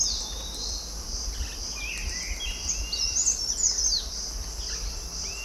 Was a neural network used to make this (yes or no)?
no